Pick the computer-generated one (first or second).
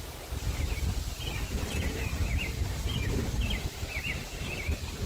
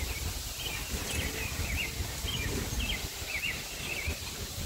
first